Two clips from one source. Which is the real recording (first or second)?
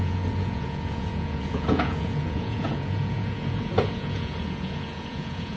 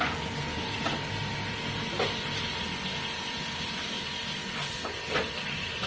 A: second